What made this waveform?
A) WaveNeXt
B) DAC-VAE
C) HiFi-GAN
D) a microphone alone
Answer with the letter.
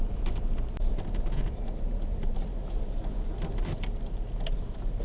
D